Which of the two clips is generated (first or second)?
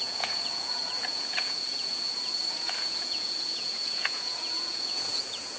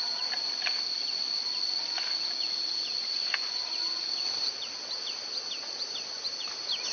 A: first